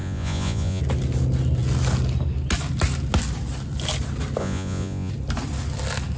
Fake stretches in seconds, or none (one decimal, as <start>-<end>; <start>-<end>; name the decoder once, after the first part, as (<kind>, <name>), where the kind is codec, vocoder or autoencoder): 0.0-0.8 (vocoder, Vocos); 4.4-5.1